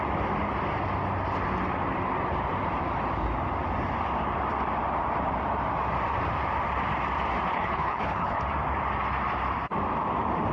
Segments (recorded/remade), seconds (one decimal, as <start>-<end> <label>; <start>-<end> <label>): 0.0-7.5 recorded; 7.5-8.4 remade; 8.4-10.5 recorded